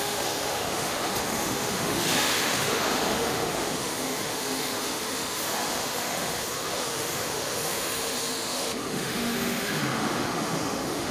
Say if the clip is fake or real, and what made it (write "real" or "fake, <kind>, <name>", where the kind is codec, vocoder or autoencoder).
fake, autoencoder, DAC-VAE